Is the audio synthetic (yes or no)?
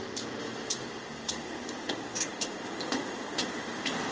no